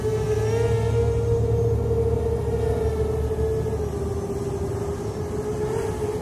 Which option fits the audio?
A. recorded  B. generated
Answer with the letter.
A